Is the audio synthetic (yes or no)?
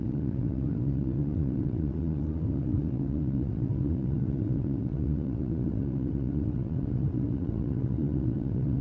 yes